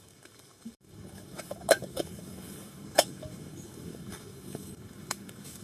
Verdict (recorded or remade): remade